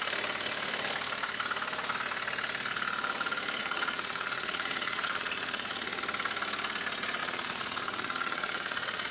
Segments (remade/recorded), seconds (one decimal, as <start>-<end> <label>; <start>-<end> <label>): 0.0-3.6 recorded; 3.6-6.0 remade; 6.0-7.2 recorded; 7.2-9.1 remade